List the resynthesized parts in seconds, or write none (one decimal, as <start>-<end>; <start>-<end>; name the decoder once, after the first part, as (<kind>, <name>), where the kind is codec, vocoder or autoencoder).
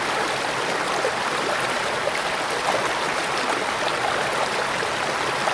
none